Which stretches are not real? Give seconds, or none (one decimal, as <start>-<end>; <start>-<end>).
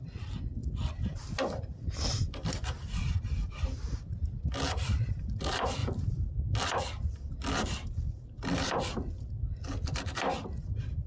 none